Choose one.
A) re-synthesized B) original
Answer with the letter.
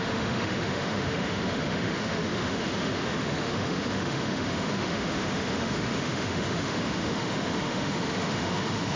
A